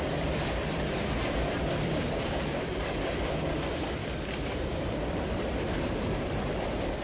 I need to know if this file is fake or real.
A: fake